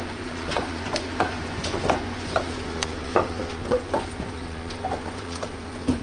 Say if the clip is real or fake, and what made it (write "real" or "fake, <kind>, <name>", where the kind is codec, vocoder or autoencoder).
fake, vocoder, Vocos